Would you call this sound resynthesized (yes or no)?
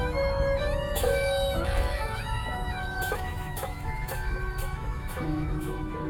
yes